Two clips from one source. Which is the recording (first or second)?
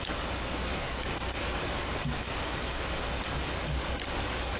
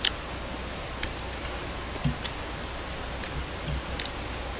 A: second